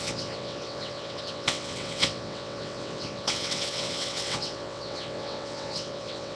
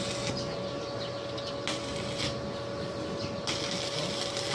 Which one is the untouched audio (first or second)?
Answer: second